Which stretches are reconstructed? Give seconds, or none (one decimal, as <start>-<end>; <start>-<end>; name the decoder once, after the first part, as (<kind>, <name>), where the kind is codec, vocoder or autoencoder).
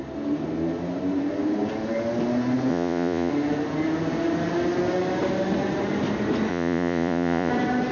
2.7-3.3 (vocoder, Vocos); 6.5-7.5